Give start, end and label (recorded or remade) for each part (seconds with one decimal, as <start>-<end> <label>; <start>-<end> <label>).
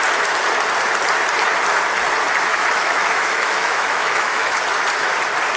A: 0.0-2.5 recorded; 2.5-4.6 remade; 4.6-5.6 recorded